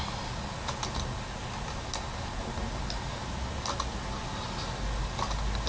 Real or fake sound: real